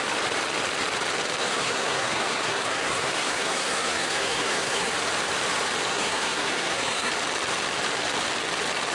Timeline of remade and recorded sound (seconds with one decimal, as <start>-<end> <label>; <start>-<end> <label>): 0.0-1.4 recorded; 1.4-4.9 remade; 4.9-5.9 recorded; 5.9-7.1 remade; 7.1-8.9 recorded